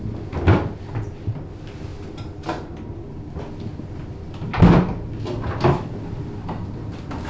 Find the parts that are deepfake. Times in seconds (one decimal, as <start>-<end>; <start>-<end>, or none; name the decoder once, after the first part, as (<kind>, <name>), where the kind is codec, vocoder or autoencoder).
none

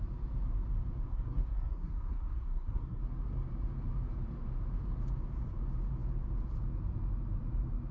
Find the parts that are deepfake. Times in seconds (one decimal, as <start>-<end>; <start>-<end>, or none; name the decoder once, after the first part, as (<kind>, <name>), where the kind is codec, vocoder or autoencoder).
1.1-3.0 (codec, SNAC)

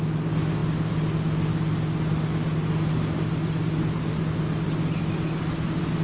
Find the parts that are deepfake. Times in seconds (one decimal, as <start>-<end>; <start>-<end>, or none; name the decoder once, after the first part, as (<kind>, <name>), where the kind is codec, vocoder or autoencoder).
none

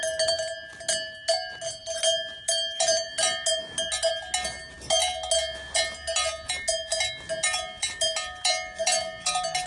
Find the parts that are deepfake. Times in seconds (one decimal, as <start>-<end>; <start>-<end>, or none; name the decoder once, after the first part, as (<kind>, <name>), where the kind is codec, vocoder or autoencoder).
none